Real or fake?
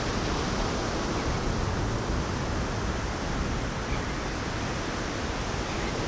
real